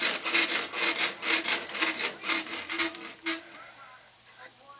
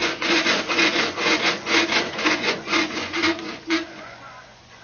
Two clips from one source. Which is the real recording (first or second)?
first